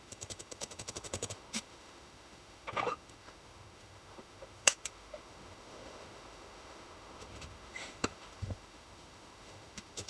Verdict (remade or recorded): remade